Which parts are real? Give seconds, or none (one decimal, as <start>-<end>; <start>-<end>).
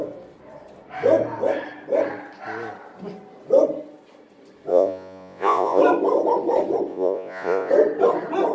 0.0-4.7; 5.8-6.9; 7.7-8.5